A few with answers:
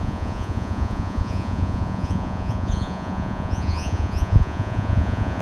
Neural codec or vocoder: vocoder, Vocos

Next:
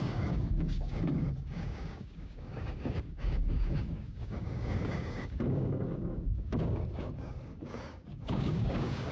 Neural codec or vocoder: codec, DAC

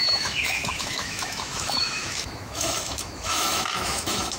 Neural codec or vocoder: autoencoder, DAC-VAE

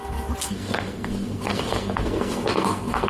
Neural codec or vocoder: codec, SNAC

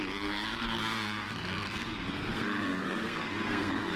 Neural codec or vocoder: codec, SNAC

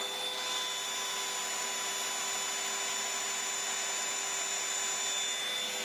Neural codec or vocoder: none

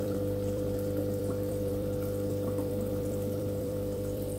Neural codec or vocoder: vocoder, BigVGAN v2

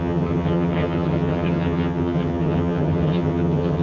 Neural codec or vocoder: vocoder, HiFi-GAN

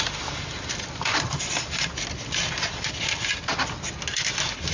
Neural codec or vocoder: none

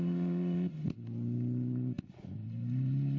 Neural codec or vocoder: none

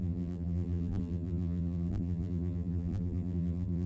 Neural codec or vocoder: vocoder, BigVGAN v2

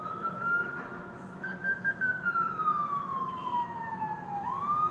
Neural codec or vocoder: autoencoder, DAC-VAE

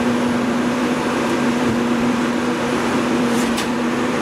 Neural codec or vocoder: vocoder, BigVGAN v2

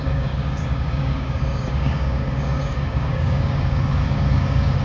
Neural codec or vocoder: codec, DAC